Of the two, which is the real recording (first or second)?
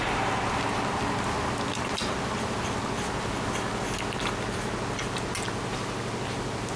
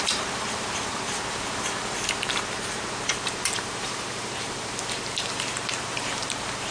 first